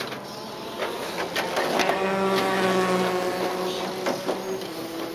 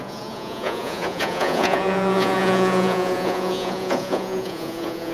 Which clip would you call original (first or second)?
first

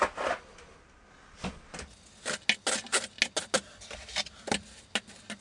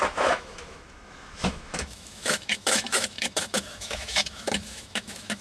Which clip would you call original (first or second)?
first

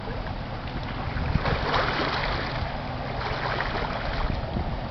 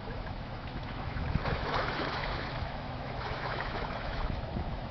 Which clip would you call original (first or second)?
first